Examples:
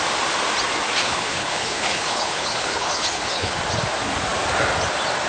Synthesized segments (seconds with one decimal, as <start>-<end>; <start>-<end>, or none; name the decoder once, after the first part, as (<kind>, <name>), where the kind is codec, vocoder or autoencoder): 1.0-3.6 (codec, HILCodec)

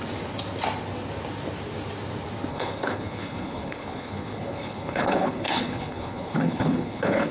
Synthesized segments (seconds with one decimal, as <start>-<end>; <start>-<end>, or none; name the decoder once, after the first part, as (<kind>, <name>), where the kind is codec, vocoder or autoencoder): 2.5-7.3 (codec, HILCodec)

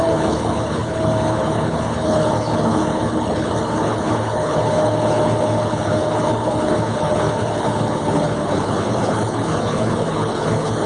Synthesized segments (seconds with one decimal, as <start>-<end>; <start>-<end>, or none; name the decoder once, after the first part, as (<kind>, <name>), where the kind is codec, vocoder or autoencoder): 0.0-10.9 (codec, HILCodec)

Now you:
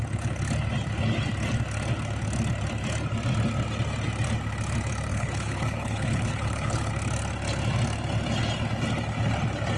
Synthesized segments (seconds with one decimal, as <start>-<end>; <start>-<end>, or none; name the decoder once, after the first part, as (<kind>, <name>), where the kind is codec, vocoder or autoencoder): 5.1-6.9 (codec, HILCodec)

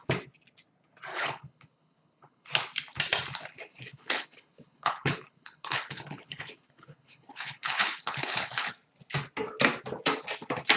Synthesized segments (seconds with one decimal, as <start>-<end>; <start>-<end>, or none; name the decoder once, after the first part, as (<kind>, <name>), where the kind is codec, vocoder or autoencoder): 1.1-2.5 (codec, HILCodec); 3.7-8.7

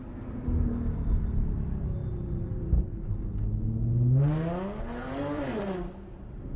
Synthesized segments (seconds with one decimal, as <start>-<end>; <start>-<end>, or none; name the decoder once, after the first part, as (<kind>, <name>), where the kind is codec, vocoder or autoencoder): none

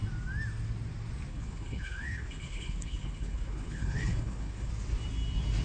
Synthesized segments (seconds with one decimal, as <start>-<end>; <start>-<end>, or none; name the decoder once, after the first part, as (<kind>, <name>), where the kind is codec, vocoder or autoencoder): 1.3-4.7 (codec, HILCodec)